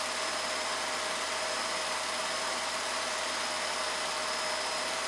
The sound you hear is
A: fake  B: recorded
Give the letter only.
B